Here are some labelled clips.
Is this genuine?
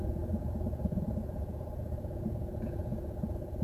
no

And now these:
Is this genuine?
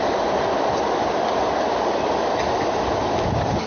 yes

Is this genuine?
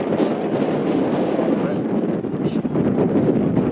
yes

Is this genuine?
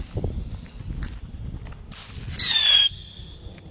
yes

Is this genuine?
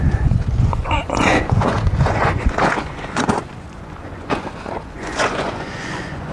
no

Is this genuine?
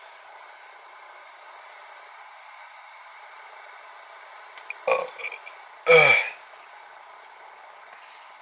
yes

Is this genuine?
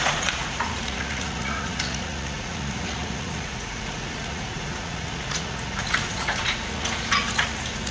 no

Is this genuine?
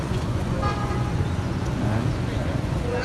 no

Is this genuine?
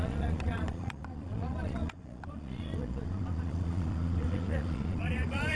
no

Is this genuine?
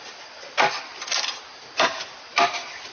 yes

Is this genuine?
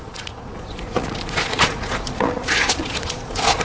no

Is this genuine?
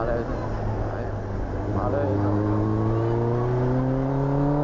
yes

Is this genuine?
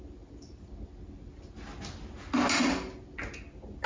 yes